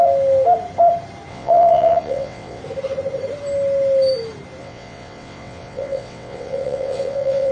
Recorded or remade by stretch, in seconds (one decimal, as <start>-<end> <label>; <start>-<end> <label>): 0.0-1.3 recorded; 1.3-2.6 remade; 2.6-4.6 recorded; 4.6-7.5 remade